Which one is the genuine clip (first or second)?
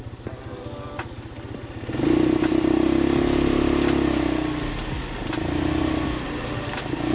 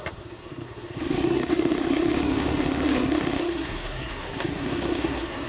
first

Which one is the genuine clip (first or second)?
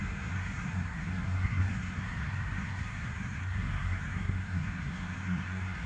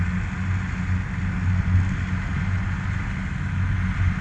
second